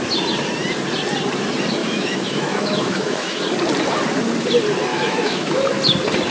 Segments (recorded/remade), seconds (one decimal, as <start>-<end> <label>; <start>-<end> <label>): 0.0-1.8 recorded; 1.8-3.4 remade; 3.4-4.9 recorded; 4.9-5.8 remade; 5.8-6.3 recorded